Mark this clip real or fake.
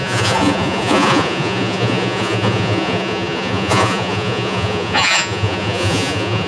fake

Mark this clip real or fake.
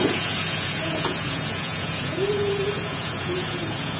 fake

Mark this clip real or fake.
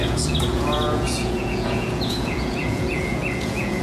fake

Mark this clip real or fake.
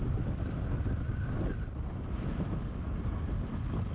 real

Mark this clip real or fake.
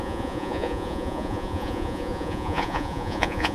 fake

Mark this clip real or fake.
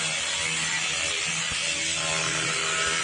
real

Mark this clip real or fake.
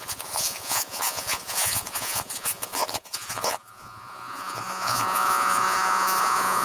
fake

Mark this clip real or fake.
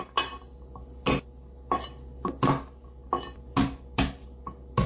real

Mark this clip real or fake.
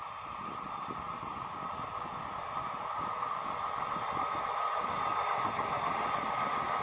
real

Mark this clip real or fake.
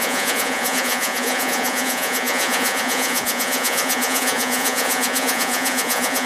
fake